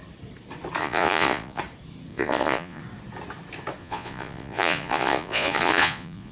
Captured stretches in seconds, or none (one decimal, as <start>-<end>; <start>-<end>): 0.0-0.8; 1.6-2.1; 2.8-3.8